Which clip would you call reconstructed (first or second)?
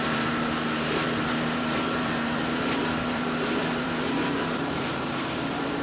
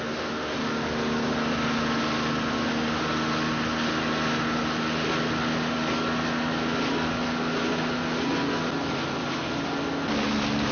first